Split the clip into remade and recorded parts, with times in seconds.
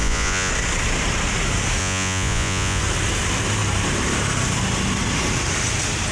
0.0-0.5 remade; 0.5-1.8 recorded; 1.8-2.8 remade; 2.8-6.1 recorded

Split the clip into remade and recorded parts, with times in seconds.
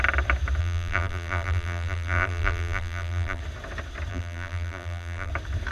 0.0-0.6 recorded; 0.6-3.4 remade; 3.4-4.1 recorded; 4.1-5.3 remade; 5.3-5.7 recorded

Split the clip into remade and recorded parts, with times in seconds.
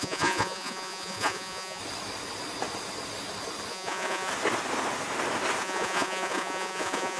0.0-1.8 remade; 1.8-3.7 recorded; 3.7-4.3 remade; 4.3-5.6 recorded; 5.6-7.2 remade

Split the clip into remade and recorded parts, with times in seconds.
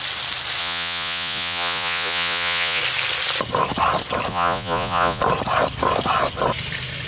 0.0-0.6 recorded; 0.6-2.8 remade; 2.8-4.3 recorded; 4.3-5.2 remade; 5.2-7.1 recorded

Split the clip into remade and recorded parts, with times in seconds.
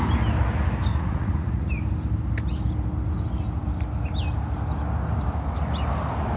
0.0-0.9 recorded; 0.9-1.7 remade; 1.7-6.4 recorded